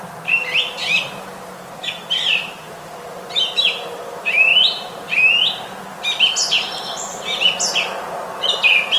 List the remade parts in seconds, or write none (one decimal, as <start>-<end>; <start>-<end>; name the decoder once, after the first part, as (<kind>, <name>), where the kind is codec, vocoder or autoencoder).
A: 0.0-0.8 (vocoder, BigVGAN v2); 2.3-4.5; 8.5-9.0